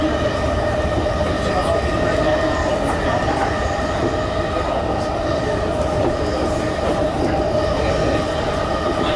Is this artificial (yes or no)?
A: no